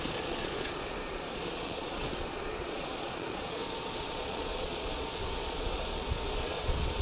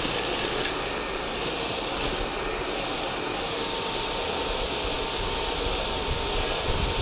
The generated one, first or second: first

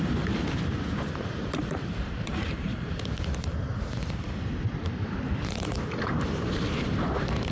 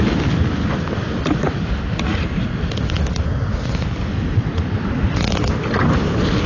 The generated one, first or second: first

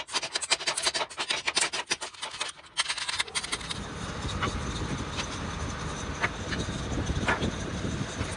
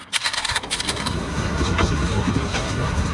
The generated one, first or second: second